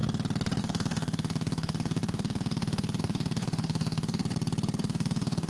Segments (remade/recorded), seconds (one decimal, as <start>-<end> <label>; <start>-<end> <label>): 0.0-0.6 recorded; 0.6-4.2 remade; 4.2-4.8 recorded; 4.8-5.5 remade

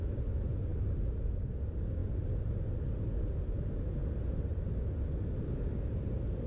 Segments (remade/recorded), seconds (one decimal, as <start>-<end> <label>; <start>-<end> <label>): 0.0-6.5 recorded

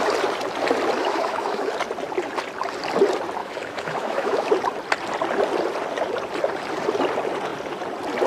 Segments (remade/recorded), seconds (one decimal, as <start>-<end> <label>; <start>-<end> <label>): 0.0-1.0 recorded; 1.0-1.7 remade; 1.7-3.4 recorded; 3.4-4.5 remade; 4.5-8.3 recorded

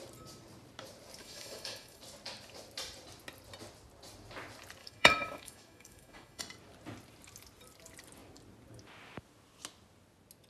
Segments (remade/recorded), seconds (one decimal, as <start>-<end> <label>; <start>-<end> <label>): 0.0-1.2 recorded; 1.2-2.0 remade; 2.0-4.8 recorded; 4.8-6.4 remade; 6.4-10.5 recorded

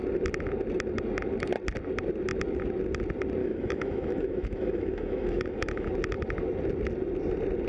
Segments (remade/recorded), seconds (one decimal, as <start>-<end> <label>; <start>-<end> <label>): 0.0-3.4 recorded; 3.4-5.9 remade; 5.9-7.7 recorded

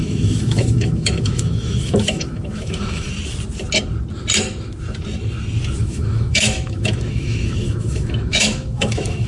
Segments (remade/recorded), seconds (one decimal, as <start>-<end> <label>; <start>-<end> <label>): 0.0-3.1 remade; 3.1-5.8 recorded; 5.8-9.3 remade